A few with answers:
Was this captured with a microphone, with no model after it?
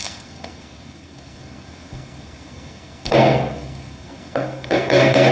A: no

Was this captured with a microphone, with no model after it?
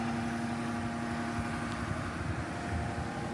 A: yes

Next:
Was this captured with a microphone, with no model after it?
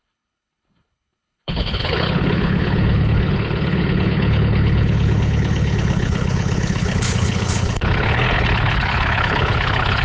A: no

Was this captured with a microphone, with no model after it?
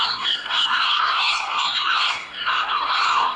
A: no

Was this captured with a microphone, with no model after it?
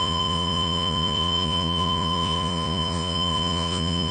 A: no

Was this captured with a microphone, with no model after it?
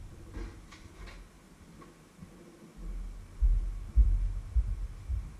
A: yes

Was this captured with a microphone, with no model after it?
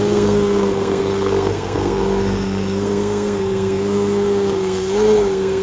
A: no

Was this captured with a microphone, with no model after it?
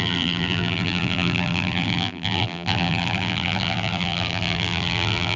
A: no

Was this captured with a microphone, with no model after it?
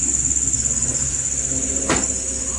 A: yes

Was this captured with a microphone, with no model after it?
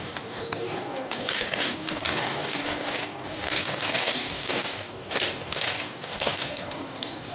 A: no